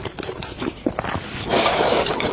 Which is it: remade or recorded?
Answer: recorded